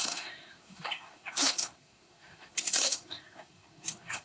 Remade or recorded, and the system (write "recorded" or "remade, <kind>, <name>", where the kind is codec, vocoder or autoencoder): remade, codec, SNAC